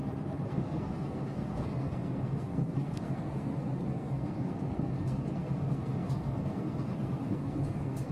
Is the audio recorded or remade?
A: remade